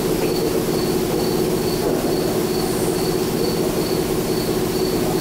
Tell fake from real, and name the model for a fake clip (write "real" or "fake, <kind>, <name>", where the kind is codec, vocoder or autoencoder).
real